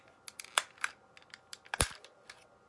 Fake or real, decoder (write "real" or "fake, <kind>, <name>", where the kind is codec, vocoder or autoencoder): real